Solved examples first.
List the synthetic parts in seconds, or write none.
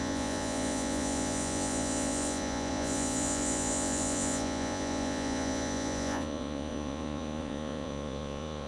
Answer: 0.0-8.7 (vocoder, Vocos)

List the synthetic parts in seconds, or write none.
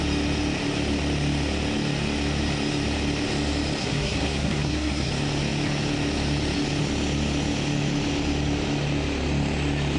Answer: 3.8-5.1 (codec, SNAC)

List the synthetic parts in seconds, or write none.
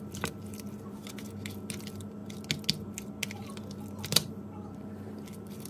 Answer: 0.0-1.0 (vocoder, BigVGAN v2); 1.8-2.2; 4.3-5.7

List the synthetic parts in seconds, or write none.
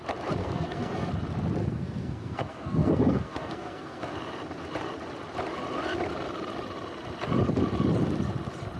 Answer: 0.4-1.1 (codec, SNAC); 1.6-4.1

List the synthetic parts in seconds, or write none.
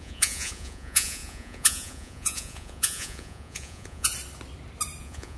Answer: 0.0-4.1 (vocoder, Vocos); 5.0-5.4